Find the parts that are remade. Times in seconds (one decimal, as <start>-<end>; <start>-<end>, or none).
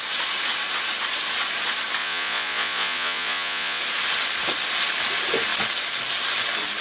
2.0-3.8